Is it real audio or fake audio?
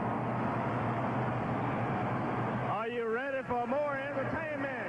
real